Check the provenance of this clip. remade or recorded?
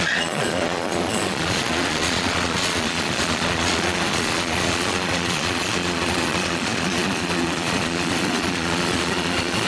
remade